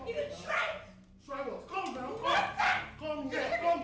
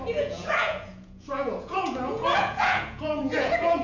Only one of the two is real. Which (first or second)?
first